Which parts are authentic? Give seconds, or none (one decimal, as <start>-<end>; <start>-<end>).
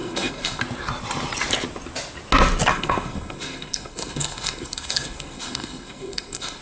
0.6-2.7